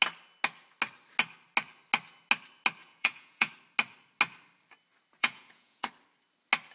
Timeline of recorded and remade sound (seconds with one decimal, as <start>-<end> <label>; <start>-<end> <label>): 0.0-2.8 recorded; 2.8-3.5 remade; 3.5-5.2 recorded; 5.2-5.9 remade; 5.9-6.7 recorded